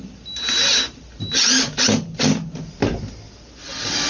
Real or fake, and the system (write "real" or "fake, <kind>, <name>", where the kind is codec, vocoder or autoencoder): real